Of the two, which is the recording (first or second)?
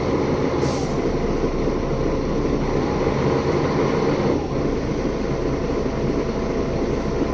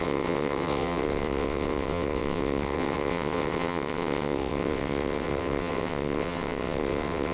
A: first